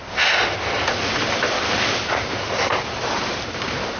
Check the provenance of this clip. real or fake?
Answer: real